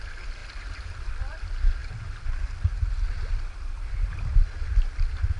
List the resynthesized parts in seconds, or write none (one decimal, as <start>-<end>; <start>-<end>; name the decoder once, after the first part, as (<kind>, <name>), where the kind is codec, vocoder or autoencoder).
none